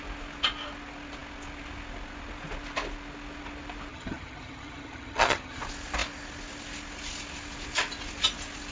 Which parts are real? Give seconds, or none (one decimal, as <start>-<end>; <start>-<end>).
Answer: 0.0-3.9; 5.6-8.7